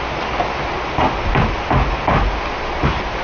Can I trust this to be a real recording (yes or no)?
yes